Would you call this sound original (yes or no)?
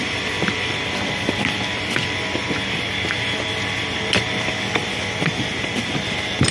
yes